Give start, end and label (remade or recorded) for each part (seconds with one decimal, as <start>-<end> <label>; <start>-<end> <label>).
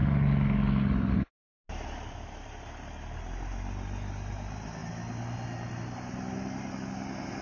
0.0-7.4 recorded